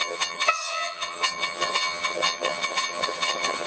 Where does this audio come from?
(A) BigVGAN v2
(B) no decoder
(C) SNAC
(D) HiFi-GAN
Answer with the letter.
D